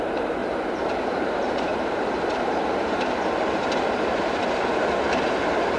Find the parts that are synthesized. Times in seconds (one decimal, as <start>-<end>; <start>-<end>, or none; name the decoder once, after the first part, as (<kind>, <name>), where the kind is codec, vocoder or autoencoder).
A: 0.0-0.4 (vocoder, BigVGAN v2); 1.0-5.8